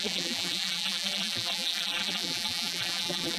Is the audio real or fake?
fake